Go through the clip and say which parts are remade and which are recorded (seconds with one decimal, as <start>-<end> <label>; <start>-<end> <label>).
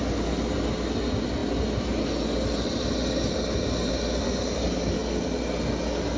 0.0-6.2 recorded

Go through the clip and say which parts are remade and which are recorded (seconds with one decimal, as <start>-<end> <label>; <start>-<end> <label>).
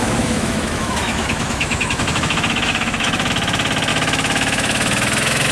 0.0-3.3 remade; 3.3-3.9 recorded; 3.9-5.5 remade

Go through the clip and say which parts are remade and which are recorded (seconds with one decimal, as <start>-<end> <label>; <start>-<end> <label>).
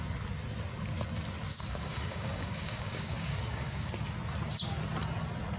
0.0-1.5 recorded; 1.5-3.9 remade; 3.9-5.6 recorded